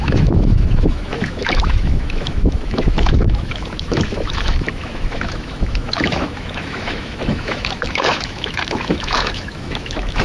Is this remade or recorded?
remade